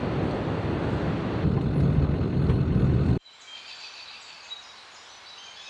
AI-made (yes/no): no